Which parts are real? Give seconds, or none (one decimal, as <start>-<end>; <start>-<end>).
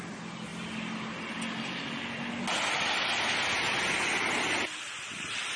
0.0-5.6